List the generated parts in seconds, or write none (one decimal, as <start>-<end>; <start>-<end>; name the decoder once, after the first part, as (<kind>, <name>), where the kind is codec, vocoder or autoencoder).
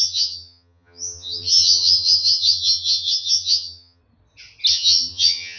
0.0-4.0 (vocoder, HiFi-GAN); 4.7-5.6